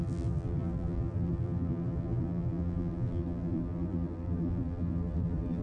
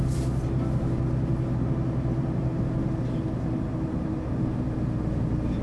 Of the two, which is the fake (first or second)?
first